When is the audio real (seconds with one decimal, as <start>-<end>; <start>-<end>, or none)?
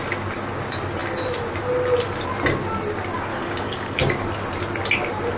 0.0-3.3; 4.0-5.4